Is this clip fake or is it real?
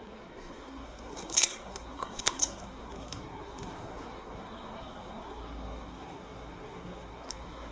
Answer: fake